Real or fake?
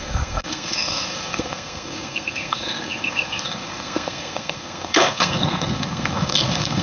fake